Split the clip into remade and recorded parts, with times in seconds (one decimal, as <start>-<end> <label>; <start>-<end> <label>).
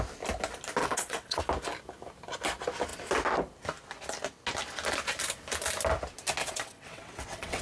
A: 0.0-0.8 recorded; 0.8-1.4 remade; 1.4-6.4 recorded; 6.4-7.6 remade